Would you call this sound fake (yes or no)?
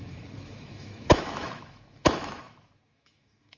yes